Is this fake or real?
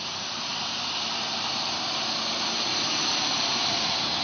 fake